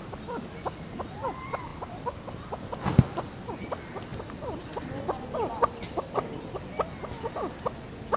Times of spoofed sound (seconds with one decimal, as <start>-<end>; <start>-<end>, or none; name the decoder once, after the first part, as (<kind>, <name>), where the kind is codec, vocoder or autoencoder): 4.1-4.6 (vocoder, BigVGAN v2)